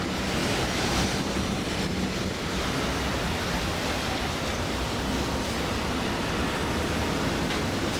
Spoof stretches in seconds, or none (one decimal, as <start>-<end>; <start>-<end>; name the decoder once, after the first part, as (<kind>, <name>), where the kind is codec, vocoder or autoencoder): 0.4-1.7 (vocoder, BigVGAN v2)